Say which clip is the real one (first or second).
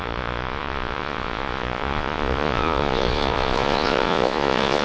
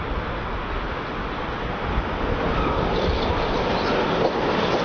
second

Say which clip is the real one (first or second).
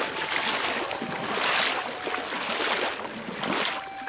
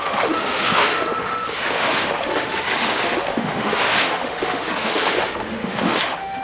first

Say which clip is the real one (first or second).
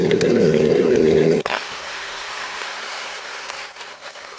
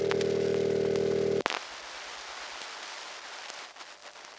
second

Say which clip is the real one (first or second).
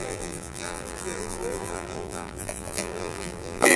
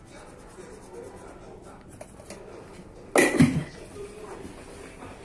second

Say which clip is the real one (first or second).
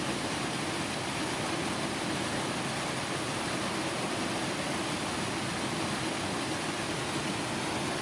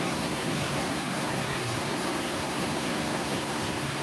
first